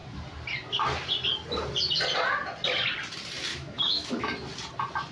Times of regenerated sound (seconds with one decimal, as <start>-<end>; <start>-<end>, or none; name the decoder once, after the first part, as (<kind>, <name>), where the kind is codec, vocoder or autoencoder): 3.5-4.1 (autoencoder, DAC-VAE)